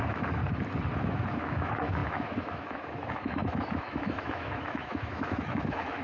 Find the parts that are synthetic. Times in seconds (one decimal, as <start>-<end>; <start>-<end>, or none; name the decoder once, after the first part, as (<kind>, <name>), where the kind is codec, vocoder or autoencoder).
0.0-0.4 (autoencoder, DAC-VAE); 1.0-6.0